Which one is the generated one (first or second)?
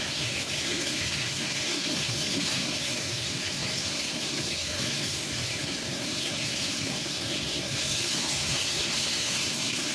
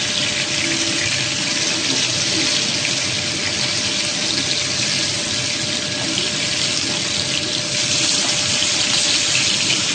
first